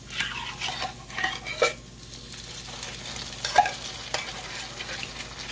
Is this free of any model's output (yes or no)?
yes